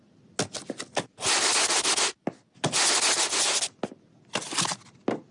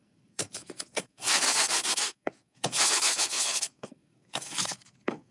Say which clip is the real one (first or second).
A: first